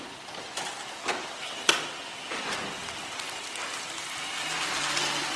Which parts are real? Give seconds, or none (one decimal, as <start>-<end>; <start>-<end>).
0.0-1.2; 1.7-5.4